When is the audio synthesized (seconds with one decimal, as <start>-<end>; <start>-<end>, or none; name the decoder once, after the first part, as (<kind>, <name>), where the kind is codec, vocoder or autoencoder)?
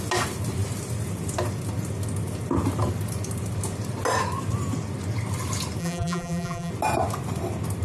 5.8-6.7 (vocoder, BigVGAN v2)